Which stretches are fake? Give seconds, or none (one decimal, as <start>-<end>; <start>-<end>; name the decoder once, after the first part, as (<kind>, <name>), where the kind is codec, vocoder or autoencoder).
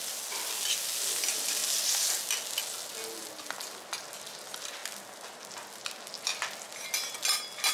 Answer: none